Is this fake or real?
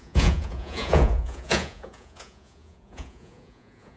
fake